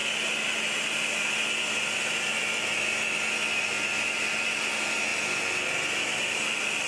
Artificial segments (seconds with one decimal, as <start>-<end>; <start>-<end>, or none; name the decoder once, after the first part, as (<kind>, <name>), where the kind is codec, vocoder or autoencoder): none